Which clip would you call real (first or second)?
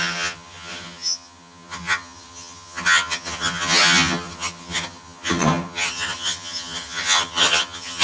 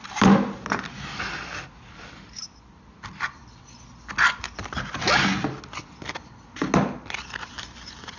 second